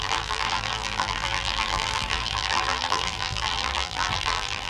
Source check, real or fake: fake